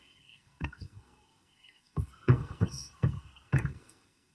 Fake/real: fake